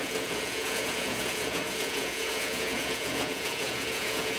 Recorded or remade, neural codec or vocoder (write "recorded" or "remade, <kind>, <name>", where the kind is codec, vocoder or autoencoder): remade, vocoder, Vocos